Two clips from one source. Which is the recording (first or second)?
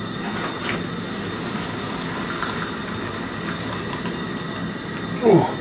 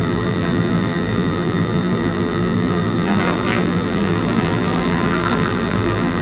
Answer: first